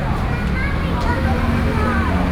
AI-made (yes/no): no